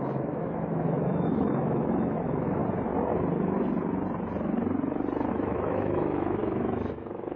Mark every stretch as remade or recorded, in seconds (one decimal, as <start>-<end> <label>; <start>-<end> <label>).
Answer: 0.0-2.6 remade; 2.6-5.3 recorded; 5.3-7.4 remade